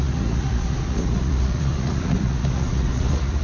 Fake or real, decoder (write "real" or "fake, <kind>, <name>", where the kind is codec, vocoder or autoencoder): fake, vocoder, Vocos